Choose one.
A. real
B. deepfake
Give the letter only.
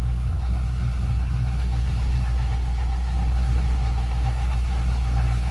B